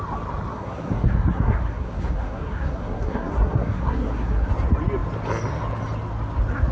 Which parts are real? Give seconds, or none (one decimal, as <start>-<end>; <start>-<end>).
0.0-0.5; 4.5-6.7